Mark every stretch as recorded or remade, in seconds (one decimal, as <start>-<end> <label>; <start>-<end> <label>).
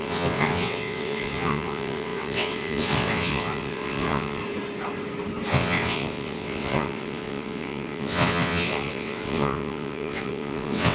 0.0-4.4 remade; 4.4-5.5 recorded; 5.5-10.9 remade